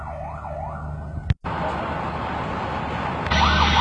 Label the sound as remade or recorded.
recorded